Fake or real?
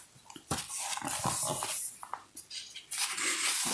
real